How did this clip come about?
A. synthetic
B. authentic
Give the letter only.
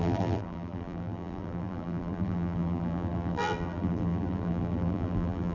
A